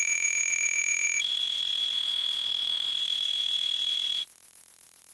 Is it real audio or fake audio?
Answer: fake